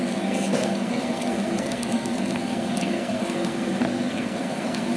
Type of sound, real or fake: fake